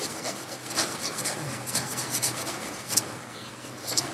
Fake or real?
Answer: fake